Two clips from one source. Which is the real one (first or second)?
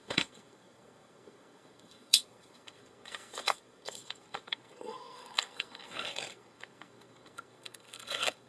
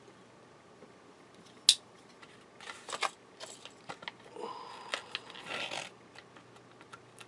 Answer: second